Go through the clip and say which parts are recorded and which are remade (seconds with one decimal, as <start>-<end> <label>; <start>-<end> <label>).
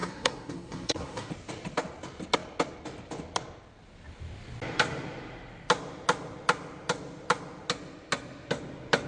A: 0.0-1.3 remade; 1.3-9.1 recorded